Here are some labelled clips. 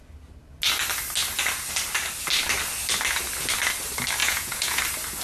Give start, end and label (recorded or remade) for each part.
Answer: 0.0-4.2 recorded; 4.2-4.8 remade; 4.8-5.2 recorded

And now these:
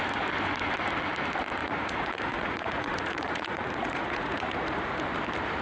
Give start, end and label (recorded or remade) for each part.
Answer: 0.0-1.6 recorded; 1.6-5.0 remade; 5.0-5.6 recorded

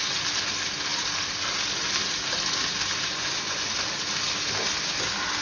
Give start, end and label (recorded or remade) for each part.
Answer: 0.0-3.1 recorded; 3.1-3.7 remade; 3.7-5.4 recorded

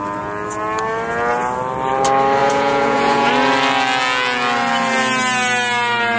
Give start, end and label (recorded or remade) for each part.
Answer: 0.0-2.4 recorded; 2.4-3.3 remade; 3.3-6.2 recorded

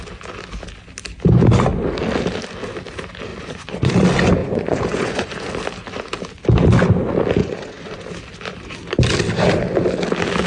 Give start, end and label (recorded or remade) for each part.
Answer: 0.0-3.3 recorded; 3.3-3.9 remade; 3.9-4.4 recorded; 4.4-5.5 remade; 5.5-7.4 recorded; 7.4-8.1 remade; 8.1-10.5 recorded

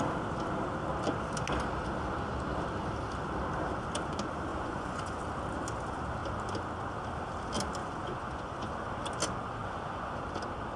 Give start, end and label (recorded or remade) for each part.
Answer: 0.0-4.5 recorded; 4.5-5.2 remade; 5.2-7.8 recorded; 7.8-8.7 remade; 8.7-9.6 recorded; 9.6-10.2 remade; 10.2-10.8 recorded

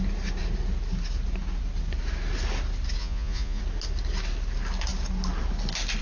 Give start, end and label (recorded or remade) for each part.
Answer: 0.0-3.0 recorded; 3.0-3.6 remade; 3.6-6.0 recorded